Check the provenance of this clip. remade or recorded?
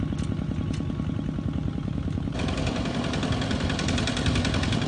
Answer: recorded